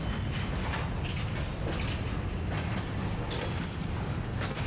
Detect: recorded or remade recorded